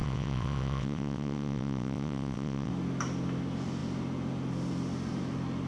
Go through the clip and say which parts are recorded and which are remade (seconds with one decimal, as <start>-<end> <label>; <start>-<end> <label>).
0.0-2.7 remade; 2.7-5.7 recorded